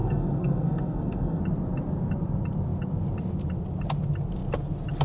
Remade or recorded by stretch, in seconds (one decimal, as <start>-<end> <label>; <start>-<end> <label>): 0.0-1.4 remade; 1.4-5.0 recorded